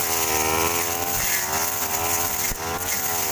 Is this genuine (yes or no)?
yes